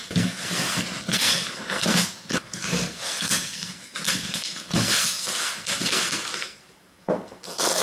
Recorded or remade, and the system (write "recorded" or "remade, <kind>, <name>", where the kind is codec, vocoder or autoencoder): remade, codec, SNAC